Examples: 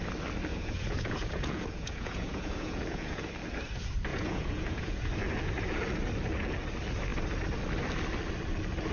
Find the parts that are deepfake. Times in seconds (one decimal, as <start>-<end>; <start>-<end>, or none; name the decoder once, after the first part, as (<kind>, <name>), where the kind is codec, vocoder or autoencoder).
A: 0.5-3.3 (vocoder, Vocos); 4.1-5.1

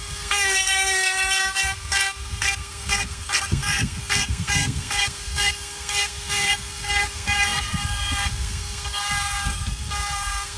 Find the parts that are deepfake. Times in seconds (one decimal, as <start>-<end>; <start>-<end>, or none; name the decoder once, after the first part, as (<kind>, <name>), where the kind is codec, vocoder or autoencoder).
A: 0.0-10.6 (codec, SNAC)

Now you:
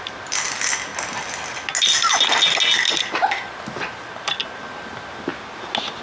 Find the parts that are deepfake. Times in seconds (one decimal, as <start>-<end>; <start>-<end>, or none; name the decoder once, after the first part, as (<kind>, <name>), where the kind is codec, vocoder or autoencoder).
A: none

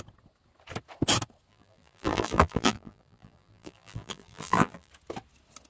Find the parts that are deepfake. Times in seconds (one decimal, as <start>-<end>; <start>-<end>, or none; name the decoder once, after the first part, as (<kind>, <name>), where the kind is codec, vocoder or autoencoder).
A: 1.5-4.9 (vocoder, BigVGAN v2)

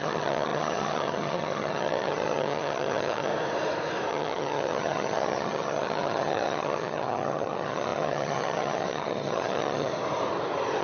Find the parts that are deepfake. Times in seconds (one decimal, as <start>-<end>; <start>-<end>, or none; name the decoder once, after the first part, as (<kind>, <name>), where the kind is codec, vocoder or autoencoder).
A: 0.0-3.3 (vocoder, HiFi-GAN); 4.1-9.9